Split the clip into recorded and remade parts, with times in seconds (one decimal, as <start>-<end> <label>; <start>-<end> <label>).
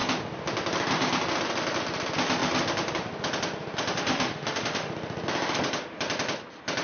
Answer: 0.0-3.9 recorded; 3.9-4.9 remade; 4.9-6.8 recorded